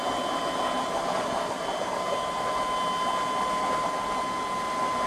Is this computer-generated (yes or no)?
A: no